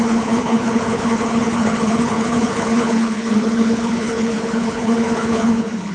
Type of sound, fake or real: fake